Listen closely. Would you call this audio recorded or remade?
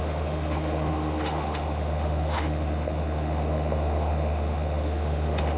remade